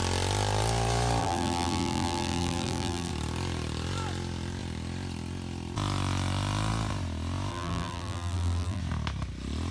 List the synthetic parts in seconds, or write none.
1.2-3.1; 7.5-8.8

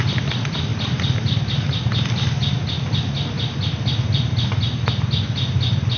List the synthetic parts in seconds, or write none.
none

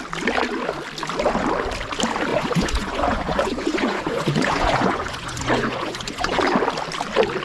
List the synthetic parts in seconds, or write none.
2.3-6.4

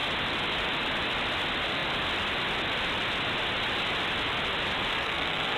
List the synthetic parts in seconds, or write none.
4.9-5.6

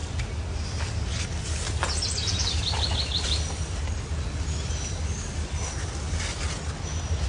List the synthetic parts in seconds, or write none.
none

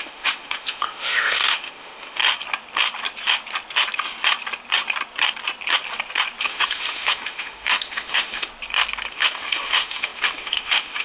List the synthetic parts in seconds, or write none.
0.0-2.2; 6.4-8.5; 9.1-11.0